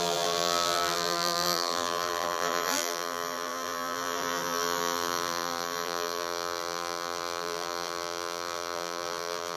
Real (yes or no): no